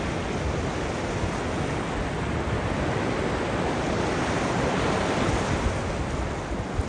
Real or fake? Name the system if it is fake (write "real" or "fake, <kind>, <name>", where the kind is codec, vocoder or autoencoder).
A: real